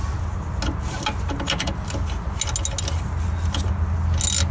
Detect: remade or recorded recorded